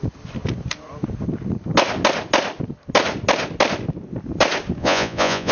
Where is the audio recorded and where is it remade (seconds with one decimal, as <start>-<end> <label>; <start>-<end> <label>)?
0.0-4.8 recorded; 4.8-5.5 remade